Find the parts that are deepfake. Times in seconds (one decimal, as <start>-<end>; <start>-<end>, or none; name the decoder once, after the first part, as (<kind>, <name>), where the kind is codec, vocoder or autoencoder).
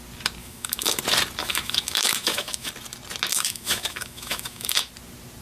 0.4-1.0 (autoencoder, DAC-VAE); 1.4-2.7; 3.3-4.9